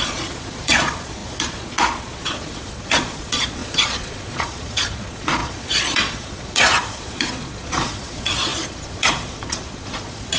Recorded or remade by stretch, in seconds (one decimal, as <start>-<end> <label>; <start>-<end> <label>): 0.0-10.4 remade